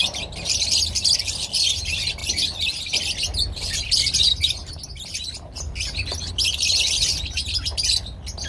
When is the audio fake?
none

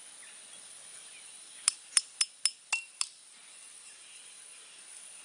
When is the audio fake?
none

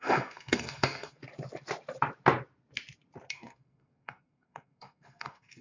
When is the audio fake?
0.0-1.2 (codec, SNAC); 3.3-5.6

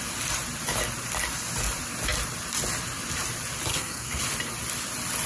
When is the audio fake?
3.7-4.2 (codec, SNAC)

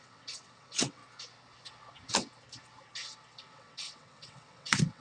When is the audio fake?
0.0-1.0 (vocoder, WaveNeXt); 3.4-5.0

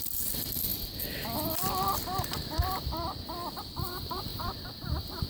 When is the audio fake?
none

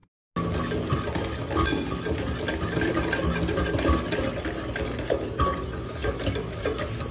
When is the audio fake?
none

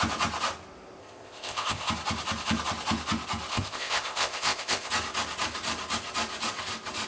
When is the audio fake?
1.0-1.9 (codec, ZipCodec); 3.5-4.9